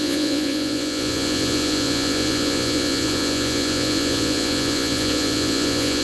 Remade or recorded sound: remade